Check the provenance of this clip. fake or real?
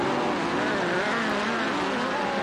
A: real